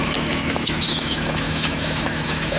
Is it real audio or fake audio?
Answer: fake